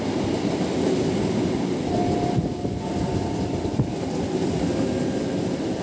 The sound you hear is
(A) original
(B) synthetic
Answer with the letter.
A